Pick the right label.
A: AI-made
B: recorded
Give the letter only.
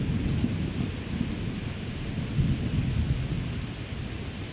B